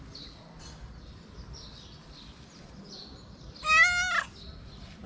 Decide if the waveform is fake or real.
real